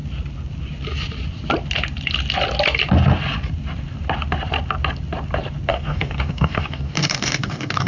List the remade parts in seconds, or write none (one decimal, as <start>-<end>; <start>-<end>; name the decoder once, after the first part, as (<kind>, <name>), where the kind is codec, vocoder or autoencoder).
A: 5.7-7.9 (codec, DAC)